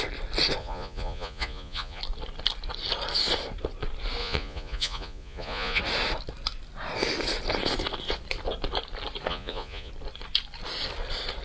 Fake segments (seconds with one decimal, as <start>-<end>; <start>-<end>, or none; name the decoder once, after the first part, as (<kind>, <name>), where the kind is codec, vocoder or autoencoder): 0.6-2.0 (vocoder, Vocos); 4.2-5.8; 9.3-9.9